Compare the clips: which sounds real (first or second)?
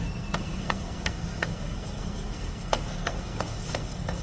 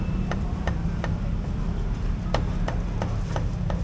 second